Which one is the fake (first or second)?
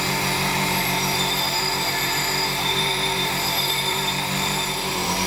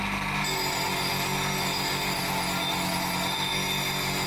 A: first